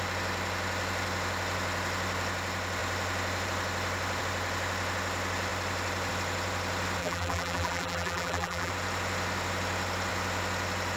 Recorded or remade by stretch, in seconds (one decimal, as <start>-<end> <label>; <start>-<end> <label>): 0.0-7.0 recorded; 7.0-8.7 remade; 8.7-11.0 recorded